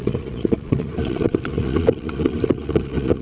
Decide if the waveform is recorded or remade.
remade